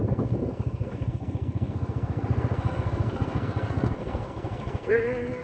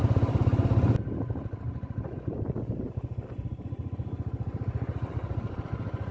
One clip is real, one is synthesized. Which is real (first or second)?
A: second